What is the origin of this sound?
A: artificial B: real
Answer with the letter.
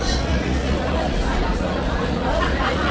A